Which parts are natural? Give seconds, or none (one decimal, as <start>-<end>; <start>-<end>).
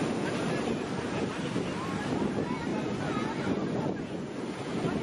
0.0-2.7; 4.4-5.0